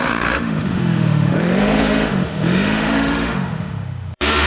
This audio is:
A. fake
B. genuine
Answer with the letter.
A